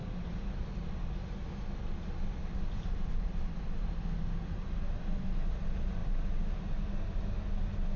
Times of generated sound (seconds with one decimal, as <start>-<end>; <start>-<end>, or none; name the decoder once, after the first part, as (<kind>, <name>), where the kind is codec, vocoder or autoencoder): 0.0-0.7 (vocoder, BigVGAN v2); 6.0-6.9